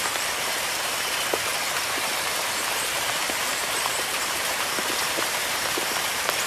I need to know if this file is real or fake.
fake